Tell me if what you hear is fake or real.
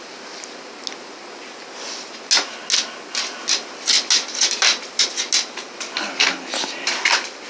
real